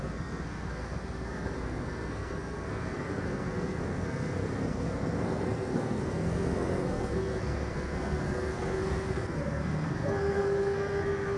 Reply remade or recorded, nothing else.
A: remade